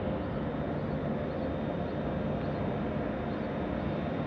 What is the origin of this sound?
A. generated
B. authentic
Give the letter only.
B